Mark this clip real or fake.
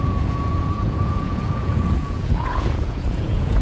fake